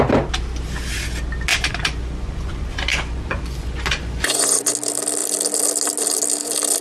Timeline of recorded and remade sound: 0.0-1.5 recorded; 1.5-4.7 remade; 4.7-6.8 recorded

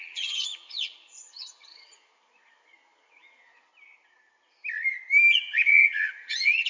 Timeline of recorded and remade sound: 0.0-3.7 remade; 3.7-5.3 recorded; 5.3-6.7 remade

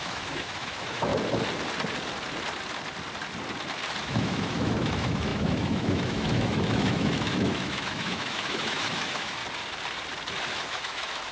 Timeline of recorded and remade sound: 0.0-1.1 remade; 1.1-4.0 recorded; 4.0-9.4 remade; 9.4-10.5 recorded; 10.5-11.3 remade

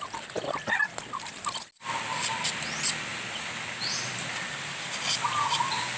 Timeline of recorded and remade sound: 0.0-6.0 recorded

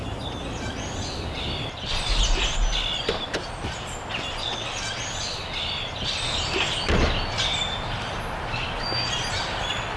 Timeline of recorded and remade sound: 0.0-4.4 recorded; 4.4-5.0 remade; 5.0-10.0 recorded